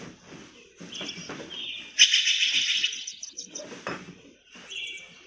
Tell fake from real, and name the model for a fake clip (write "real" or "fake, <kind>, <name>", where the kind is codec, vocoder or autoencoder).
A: fake, vocoder, BigVGAN v2